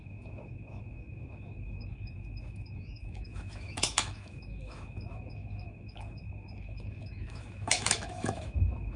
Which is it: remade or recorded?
remade